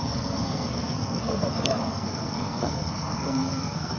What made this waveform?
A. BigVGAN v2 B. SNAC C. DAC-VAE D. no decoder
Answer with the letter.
B